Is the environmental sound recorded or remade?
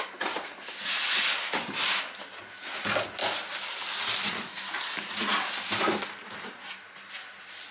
recorded